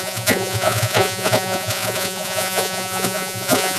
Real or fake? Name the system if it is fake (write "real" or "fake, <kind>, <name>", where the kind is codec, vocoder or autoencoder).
fake, vocoder, Vocos